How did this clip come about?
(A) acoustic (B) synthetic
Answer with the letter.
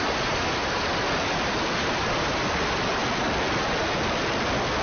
A